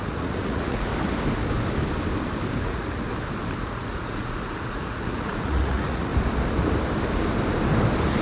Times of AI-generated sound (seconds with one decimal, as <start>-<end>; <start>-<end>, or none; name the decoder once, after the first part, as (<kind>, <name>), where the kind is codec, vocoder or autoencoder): 0.0-0.9 (vocoder, Vocos); 2.6-3.1; 3.6-6.1